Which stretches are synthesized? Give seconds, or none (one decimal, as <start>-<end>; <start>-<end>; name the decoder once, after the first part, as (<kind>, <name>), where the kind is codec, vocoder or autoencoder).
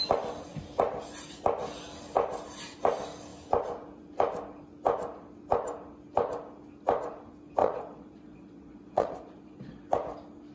7.6-9.8 (vocoder, Vocos)